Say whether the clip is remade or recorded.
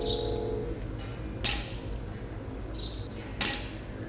recorded